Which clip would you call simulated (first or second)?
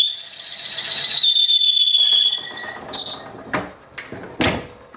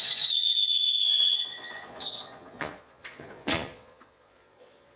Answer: second